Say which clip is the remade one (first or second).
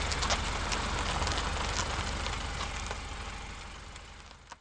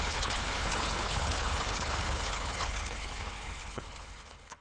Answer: second